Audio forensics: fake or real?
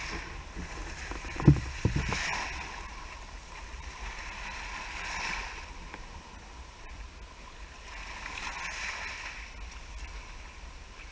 real